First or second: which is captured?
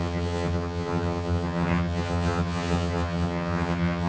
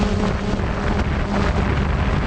second